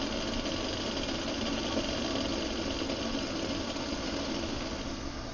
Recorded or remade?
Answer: recorded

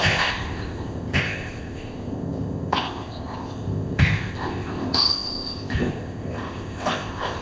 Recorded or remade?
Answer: remade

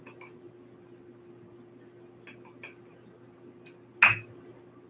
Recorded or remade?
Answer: recorded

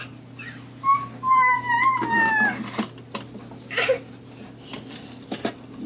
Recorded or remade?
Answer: recorded